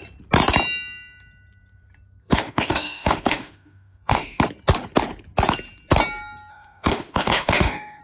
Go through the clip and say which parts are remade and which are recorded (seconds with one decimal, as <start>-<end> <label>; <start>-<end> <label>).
0.0-2.2 recorded; 2.2-4.4 remade; 4.4-6.5 recorded; 6.5-8.0 remade